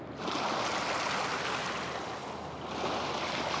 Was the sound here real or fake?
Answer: real